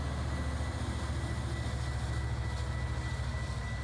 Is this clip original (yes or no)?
yes